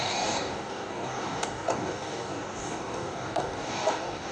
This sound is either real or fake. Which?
fake